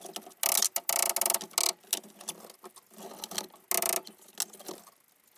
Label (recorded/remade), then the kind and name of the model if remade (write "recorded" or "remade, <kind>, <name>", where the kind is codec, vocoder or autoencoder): recorded